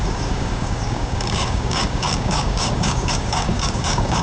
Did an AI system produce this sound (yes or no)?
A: yes